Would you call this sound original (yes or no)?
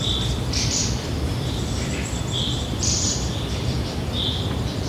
no